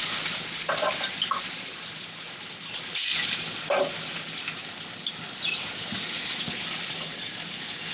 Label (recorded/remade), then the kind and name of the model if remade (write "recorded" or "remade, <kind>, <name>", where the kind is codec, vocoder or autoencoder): recorded